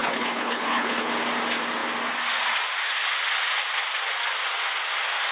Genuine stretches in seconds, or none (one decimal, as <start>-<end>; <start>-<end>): 1.1-5.3